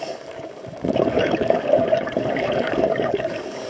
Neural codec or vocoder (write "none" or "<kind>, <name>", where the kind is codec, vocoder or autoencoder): codec, DAC